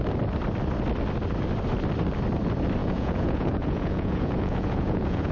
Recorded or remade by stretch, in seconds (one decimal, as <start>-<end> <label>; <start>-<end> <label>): 0.0-2.8 recorded; 2.8-5.3 remade